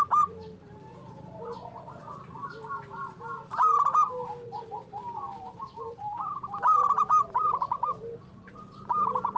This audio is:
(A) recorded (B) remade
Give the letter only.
B